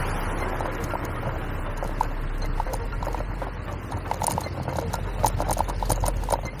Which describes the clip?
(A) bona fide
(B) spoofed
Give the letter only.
A